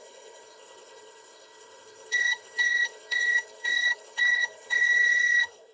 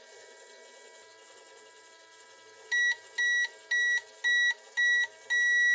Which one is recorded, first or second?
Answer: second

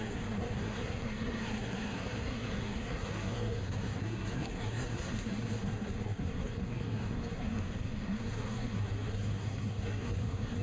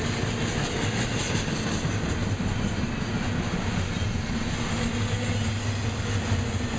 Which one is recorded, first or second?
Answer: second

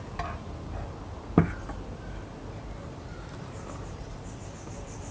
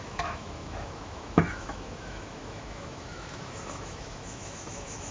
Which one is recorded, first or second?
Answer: first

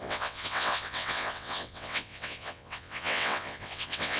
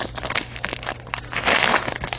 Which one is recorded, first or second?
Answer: second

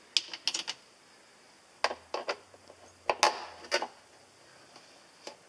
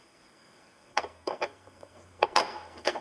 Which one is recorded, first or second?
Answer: first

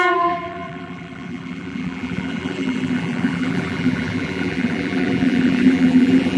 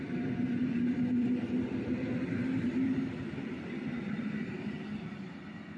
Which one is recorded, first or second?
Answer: second